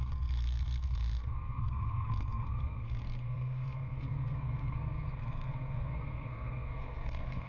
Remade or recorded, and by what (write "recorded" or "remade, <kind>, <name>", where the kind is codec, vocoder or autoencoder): remade, codec, SNAC